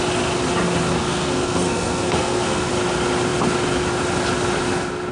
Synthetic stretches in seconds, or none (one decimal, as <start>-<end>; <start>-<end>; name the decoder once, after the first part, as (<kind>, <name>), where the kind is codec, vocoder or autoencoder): 1.0-2.7 (codec, SNAC)